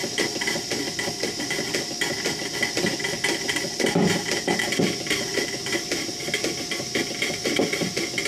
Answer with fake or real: real